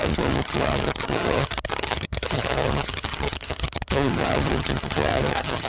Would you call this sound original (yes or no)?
no